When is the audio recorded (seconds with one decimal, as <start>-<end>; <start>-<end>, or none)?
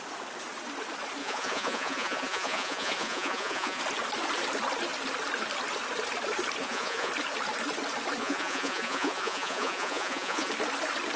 0.0-1.2; 3.8-6.6; 7.1-8.2; 10.5-11.2